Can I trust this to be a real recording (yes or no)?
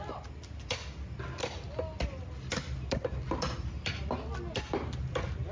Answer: yes